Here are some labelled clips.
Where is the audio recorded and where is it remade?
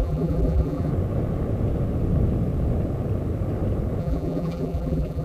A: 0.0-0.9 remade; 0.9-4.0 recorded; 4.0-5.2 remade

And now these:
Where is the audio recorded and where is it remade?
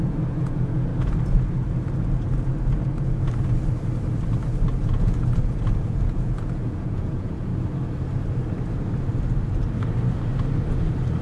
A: 0.0-0.9 remade; 0.9-4.9 recorded; 4.9-7.5 remade; 7.5-11.2 recorded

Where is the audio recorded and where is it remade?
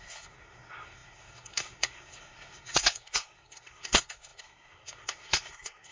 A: 0.0-5.9 remade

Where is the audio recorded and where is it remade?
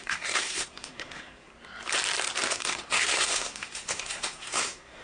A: 0.0-1.5 remade; 1.5-2.5 recorded; 2.5-5.0 remade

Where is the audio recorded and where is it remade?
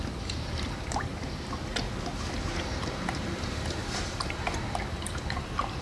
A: 0.0-1.1 remade; 1.1-2.6 recorded; 2.6-5.8 remade